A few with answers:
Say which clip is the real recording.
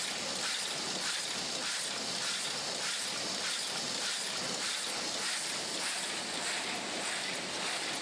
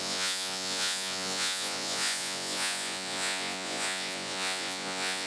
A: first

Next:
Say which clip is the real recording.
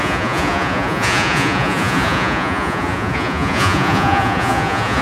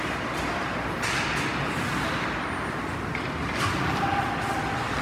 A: second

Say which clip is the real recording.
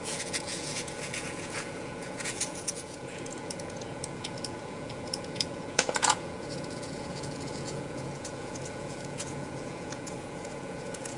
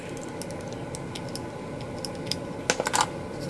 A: second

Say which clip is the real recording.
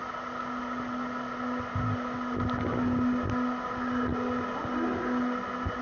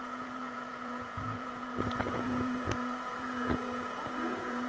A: first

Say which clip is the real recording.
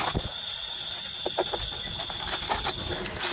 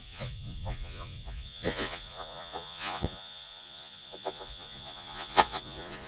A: first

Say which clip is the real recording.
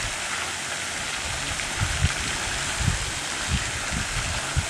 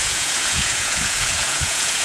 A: first